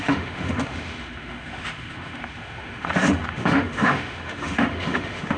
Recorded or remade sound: remade